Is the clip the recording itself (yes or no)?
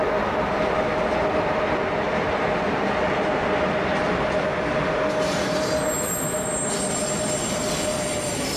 yes